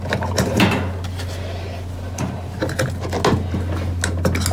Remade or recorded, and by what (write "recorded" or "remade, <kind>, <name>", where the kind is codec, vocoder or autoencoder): recorded